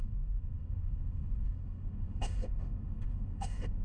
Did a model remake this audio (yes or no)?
yes